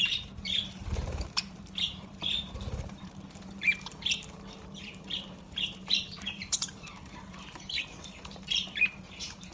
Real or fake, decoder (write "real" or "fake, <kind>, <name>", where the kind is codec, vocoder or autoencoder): fake, vocoder, BigVGAN v2